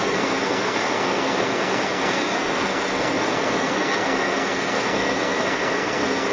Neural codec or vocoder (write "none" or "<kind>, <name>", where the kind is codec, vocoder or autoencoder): codec, SNAC